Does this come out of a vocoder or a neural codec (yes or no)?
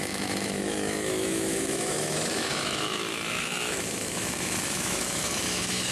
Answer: yes